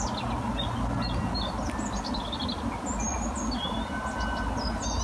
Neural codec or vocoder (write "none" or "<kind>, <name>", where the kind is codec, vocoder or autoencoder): none